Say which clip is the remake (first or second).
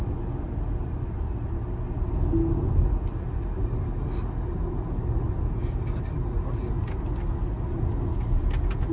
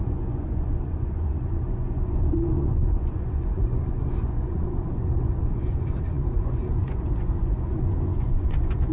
second